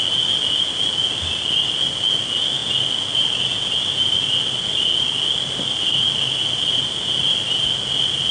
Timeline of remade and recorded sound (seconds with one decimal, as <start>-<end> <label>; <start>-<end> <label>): 0.0-8.3 recorded